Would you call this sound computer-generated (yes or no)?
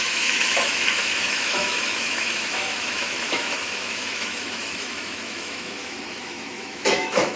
yes